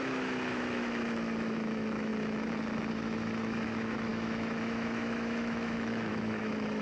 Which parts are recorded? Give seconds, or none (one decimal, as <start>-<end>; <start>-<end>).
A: 2.1-2.9